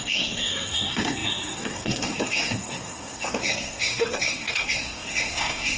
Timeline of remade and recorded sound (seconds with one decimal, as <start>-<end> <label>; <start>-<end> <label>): 0.0-5.8 remade